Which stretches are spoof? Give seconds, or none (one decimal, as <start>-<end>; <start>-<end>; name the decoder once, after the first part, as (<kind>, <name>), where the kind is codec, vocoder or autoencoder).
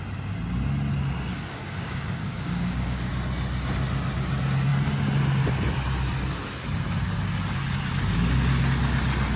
1.3-3.1 (codec, DAC)